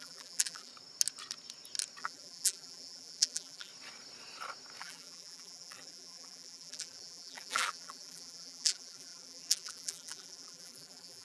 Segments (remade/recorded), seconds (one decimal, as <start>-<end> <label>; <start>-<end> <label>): 0.0-0.7 remade; 0.7-2.0 recorded; 2.0-3.7 remade; 3.7-4.8 recorded; 4.8-11.2 remade